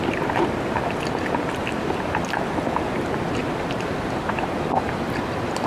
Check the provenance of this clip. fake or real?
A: fake